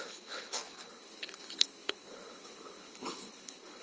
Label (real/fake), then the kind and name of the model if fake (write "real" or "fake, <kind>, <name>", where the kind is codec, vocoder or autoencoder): fake, codec, HILCodec